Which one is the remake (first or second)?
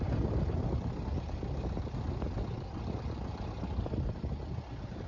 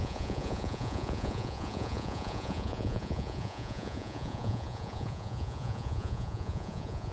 second